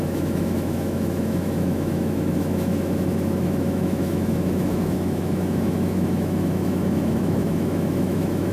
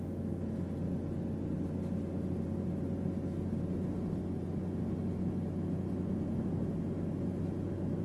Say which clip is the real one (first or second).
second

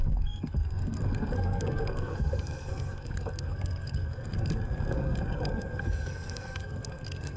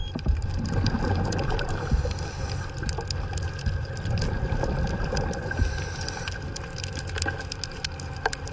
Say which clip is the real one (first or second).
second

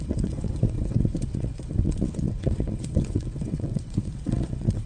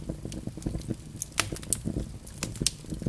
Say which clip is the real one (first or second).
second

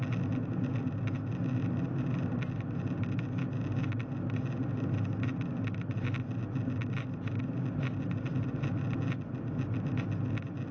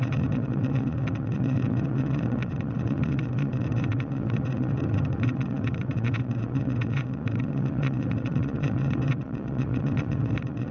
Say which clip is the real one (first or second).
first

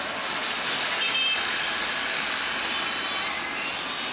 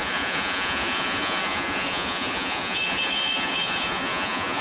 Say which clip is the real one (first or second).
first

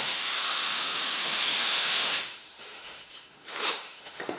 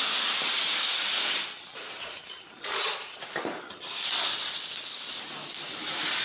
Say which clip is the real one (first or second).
second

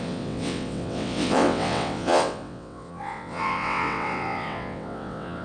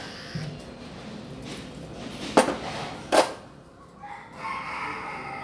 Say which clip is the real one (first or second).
second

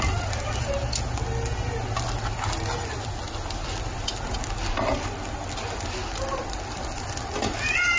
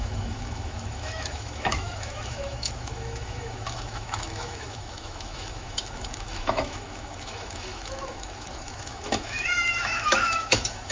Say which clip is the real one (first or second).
first